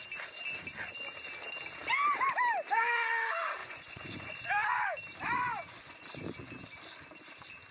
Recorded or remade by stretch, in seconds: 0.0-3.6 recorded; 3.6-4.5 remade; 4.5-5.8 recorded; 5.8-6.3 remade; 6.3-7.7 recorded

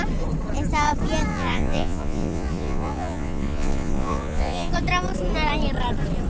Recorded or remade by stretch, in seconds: 0.0-1.3 recorded; 1.3-4.7 remade; 4.7-6.3 recorded